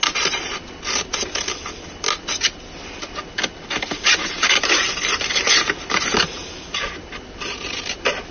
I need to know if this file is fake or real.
real